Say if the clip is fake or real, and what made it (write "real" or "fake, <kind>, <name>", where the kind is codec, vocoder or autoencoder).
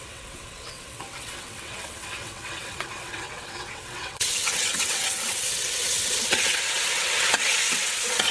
fake, vocoder, WaveNeXt